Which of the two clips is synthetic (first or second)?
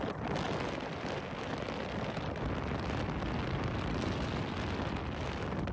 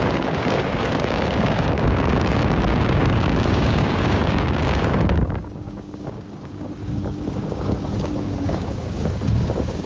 second